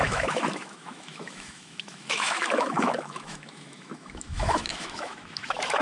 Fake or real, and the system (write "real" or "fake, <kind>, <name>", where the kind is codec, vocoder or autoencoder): fake, autoencoder, DAC-VAE